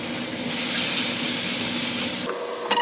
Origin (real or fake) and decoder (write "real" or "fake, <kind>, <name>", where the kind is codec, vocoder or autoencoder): real